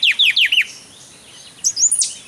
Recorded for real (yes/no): yes